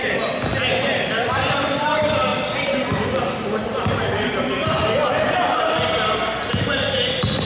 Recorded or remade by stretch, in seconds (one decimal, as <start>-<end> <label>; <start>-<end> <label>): 0.0-7.4 recorded